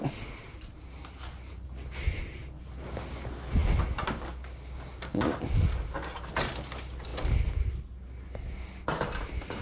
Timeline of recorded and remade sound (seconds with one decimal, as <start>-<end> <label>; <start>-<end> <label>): 0.0-9.6 recorded